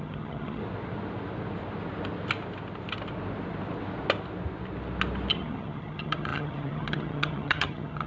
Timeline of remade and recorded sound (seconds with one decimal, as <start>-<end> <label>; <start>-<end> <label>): 0.0-0.6 remade; 0.6-5.3 recorded; 5.3-8.1 remade